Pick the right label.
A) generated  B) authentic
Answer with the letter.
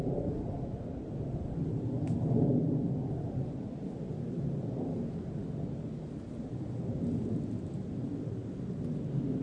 B